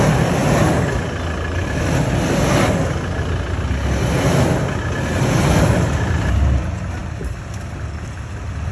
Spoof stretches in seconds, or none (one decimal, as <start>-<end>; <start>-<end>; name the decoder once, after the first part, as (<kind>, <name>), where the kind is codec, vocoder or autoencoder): none

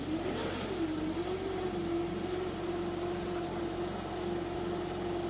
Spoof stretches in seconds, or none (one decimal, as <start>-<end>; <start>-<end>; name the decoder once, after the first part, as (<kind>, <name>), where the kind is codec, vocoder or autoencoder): 0.4-3.6 (vocoder, BigVGAN v2)

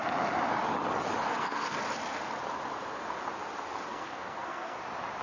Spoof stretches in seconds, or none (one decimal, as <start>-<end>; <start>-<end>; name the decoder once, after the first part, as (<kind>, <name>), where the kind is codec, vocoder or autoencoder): 1.3-1.8 (codec, SNAC); 3.9-4.8

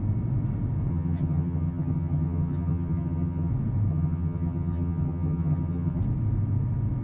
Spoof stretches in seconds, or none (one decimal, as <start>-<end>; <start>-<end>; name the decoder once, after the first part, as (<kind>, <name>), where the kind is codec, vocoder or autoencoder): 0.9-3.5 (vocoder, HiFi-GAN); 3.9-6.0